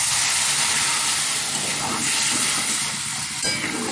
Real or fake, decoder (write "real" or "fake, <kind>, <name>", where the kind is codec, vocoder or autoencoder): real